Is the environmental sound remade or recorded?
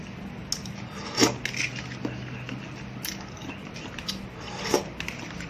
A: recorded